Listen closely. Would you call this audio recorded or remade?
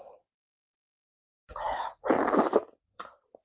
remade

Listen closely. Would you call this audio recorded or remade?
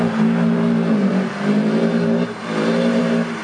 remade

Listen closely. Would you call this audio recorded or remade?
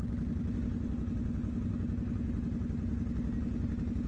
recorded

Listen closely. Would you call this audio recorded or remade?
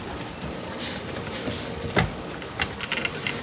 recorded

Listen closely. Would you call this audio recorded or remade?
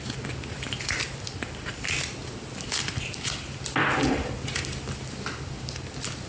recorded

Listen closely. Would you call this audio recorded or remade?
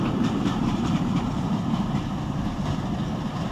remade